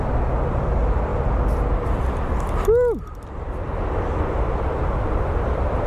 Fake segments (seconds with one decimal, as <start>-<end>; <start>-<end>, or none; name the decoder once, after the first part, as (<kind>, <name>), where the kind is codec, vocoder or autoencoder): none